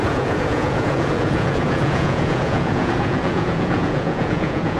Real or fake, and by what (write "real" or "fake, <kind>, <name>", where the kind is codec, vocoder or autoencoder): fake, vocoder, Vocos